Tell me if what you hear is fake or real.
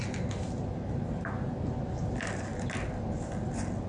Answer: real